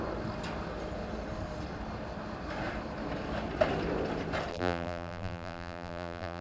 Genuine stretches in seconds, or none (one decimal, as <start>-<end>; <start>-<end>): 0.0-4.5